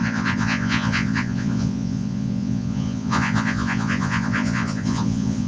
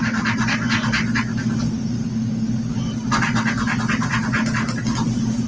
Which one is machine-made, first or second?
first